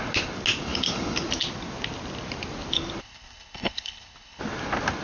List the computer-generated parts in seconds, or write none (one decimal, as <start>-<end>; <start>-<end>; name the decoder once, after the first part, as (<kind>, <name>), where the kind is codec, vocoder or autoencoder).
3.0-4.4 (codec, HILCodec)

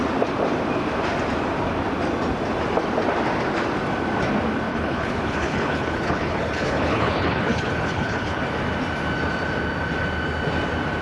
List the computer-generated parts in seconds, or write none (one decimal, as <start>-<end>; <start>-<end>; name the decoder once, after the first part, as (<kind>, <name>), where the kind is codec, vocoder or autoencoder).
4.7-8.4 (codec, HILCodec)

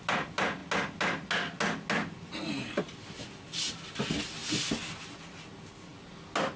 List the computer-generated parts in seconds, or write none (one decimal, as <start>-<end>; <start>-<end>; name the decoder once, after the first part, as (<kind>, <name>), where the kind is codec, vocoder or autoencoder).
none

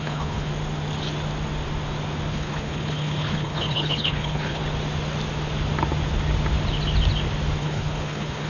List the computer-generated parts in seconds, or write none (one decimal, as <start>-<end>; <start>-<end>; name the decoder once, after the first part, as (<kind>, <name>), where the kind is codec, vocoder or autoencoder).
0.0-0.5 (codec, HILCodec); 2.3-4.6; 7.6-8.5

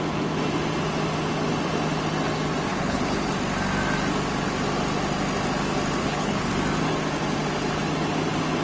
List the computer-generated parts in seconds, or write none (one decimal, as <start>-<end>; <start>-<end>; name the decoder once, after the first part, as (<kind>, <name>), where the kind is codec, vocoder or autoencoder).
2.7-3.3 (codec, HILCodec); 6.0-6.5